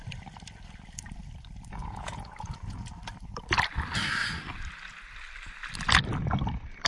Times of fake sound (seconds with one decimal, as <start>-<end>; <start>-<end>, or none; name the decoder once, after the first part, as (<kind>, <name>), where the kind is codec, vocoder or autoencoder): 1.8-2.9 (vocoder, Vocos)

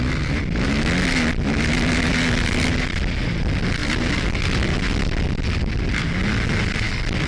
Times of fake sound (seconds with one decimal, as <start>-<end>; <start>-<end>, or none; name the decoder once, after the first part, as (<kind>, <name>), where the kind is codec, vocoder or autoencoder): none

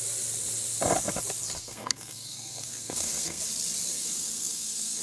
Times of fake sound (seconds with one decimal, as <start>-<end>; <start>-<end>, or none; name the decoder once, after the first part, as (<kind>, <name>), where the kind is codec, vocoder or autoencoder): 1.6-3.4 (codec, SNAC); 3.9-5.0

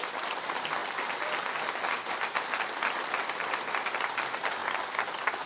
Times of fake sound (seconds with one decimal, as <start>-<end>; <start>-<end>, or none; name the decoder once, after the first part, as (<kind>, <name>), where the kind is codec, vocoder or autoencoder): none

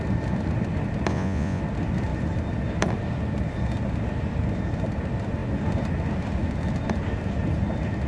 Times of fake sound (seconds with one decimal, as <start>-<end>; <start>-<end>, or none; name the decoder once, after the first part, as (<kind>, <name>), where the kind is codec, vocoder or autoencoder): 1.1-1.6 (vocoder, Vocos)

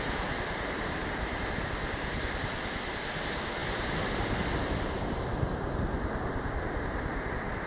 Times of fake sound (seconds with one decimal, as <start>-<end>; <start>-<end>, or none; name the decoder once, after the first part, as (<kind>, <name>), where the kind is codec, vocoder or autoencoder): none